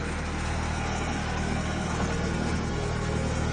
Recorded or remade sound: remade